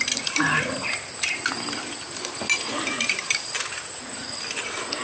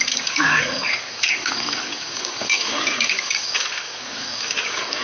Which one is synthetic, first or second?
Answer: second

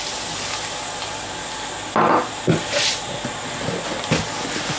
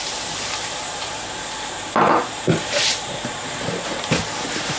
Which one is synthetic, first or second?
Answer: second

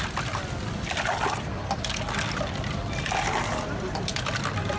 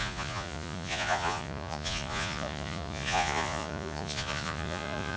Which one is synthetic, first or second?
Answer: second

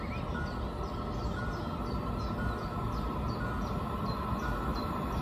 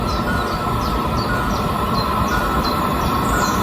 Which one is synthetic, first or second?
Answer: second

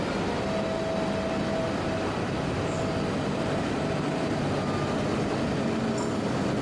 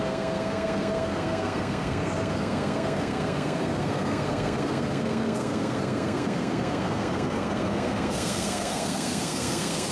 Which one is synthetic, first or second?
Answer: second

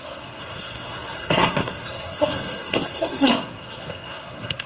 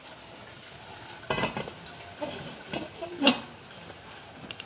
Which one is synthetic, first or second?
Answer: first